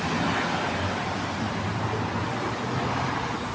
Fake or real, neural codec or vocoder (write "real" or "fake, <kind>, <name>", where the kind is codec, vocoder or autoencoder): real